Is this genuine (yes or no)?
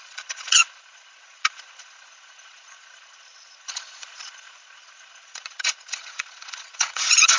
no